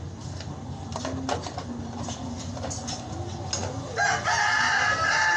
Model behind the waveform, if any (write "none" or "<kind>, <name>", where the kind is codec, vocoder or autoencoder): none